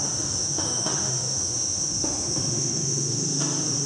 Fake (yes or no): yes